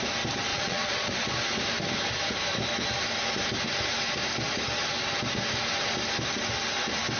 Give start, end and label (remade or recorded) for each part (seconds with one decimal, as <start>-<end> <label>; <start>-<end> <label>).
0.0-0.5 recorded; 0.5-1.1 remade; 1.1-7.2 recorded